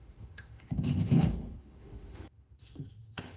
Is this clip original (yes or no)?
no